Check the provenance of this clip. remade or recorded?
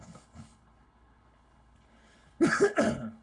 remade